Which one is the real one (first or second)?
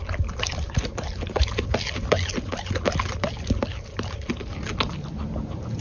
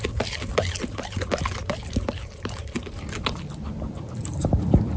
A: first